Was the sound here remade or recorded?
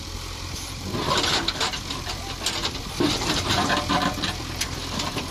remade